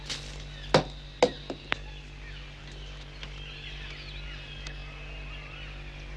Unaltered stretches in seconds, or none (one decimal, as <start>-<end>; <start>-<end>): 0.0-6.2